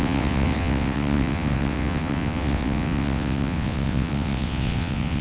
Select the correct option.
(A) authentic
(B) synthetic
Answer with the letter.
B